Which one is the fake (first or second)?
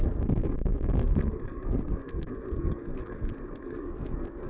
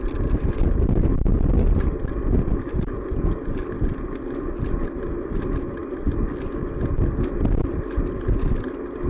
first